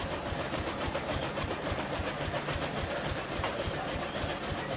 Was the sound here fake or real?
fake